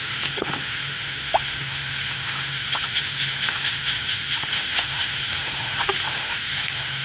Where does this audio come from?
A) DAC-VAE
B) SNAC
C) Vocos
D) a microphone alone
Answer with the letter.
A